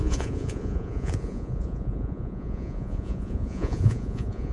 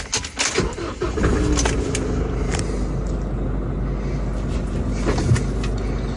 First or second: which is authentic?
second